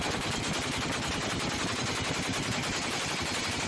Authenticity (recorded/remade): recorded